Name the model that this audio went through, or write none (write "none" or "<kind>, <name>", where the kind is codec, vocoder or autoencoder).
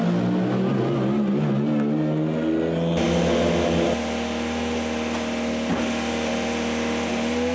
none